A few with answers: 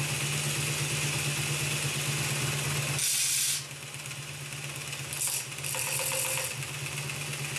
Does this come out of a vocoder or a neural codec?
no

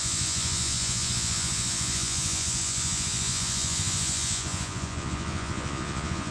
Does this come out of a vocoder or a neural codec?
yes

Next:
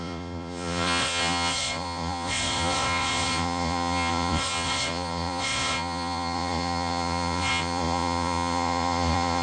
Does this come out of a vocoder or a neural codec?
yes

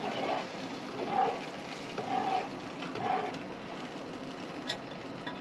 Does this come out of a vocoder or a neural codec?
no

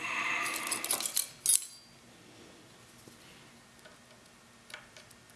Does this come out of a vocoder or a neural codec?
no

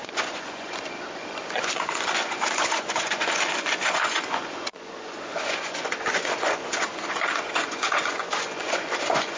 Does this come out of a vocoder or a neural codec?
yes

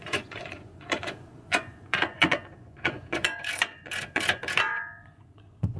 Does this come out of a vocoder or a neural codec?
yes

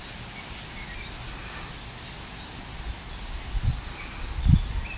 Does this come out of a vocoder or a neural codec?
no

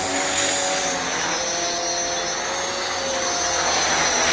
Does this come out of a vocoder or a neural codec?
no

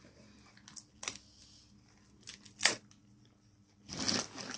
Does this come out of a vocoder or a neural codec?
no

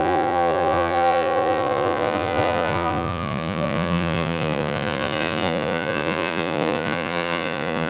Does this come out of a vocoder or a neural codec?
yes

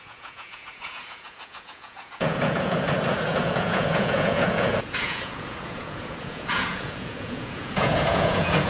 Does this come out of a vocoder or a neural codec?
yes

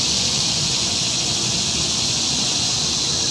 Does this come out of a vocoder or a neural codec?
yes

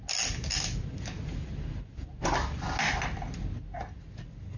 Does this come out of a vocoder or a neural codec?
no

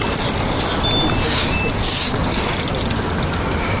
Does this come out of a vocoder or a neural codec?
no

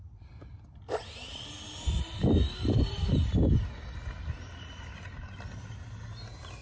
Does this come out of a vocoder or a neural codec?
no